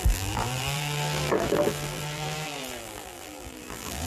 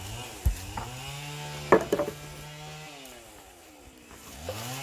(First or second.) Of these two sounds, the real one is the second